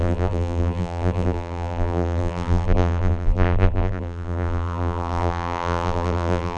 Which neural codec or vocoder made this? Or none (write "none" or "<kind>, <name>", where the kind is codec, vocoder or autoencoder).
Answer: vocoder, BigVGAN v2